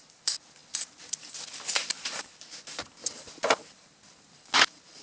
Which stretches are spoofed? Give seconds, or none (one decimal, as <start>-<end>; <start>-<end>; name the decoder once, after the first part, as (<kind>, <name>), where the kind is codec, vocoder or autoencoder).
none